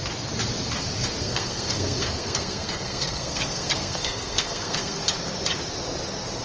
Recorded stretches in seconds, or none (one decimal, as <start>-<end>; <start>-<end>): 0.0-1.2; 5.0-6.4